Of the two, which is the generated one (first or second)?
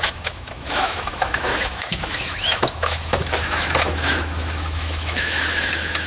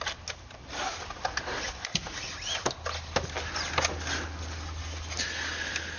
first